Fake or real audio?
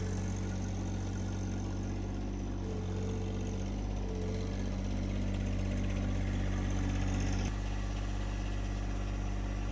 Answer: real